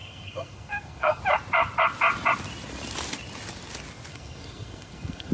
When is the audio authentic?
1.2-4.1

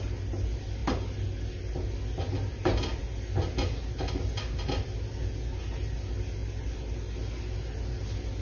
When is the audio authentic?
0.0-8.4